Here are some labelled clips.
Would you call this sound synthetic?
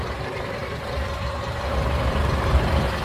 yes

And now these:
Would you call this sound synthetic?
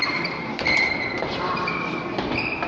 yes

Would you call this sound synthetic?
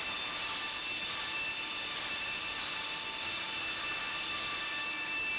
no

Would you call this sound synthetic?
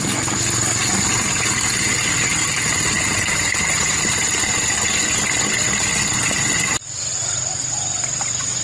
no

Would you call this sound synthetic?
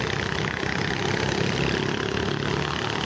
no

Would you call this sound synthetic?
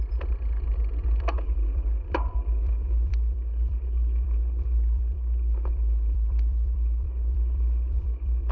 yes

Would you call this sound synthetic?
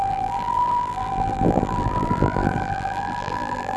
yes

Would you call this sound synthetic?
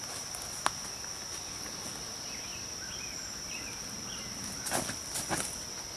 no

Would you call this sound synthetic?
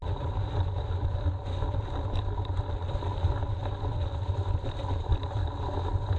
no